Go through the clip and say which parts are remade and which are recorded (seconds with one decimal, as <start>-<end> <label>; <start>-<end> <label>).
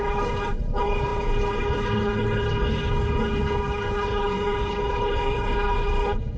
0.0-6.4 remade